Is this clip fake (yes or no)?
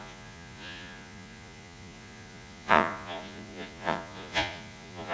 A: yes